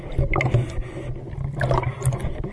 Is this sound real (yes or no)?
yes